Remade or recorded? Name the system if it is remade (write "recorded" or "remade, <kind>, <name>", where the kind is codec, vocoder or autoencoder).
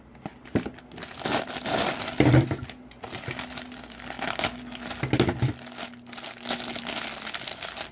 recorded